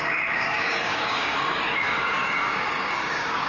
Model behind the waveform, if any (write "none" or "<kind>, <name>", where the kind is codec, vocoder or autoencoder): codec, DAC